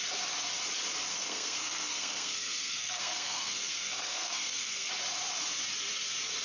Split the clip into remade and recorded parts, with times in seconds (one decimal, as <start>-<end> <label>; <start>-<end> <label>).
0.0-1.1 recorded; 1.1-4.9 remade; 4.9-6.4 recorded